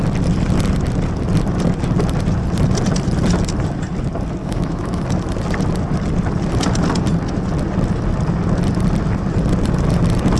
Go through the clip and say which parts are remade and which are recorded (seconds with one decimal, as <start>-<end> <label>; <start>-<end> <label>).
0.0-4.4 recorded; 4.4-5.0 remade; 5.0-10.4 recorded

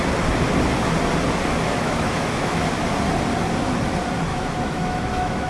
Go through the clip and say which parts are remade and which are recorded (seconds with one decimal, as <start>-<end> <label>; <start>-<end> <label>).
0.0-1.5 recorded; 1.5-2.8 remade; 2.8-4.3 recorded; 4.3-5.5 remade

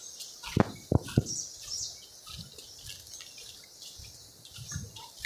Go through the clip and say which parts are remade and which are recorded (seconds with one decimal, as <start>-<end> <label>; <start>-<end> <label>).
0.0-5.3 recorded

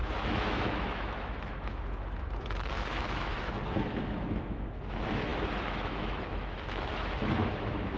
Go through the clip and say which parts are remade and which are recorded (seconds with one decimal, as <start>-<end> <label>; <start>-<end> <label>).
0.0-8.0 remade